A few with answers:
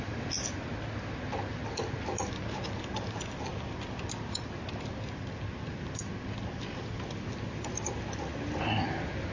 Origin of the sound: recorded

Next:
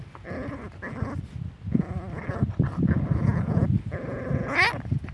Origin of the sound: recorded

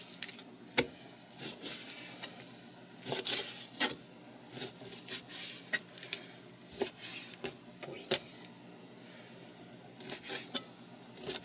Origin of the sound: recorded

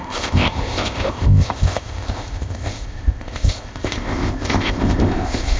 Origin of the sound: remade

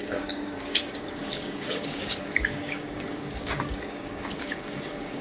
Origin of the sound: remade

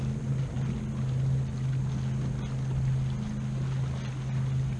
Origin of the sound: recorded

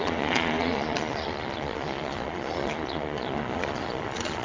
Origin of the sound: remade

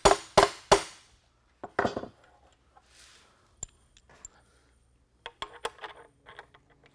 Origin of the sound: recorded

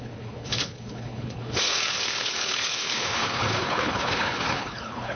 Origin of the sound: remade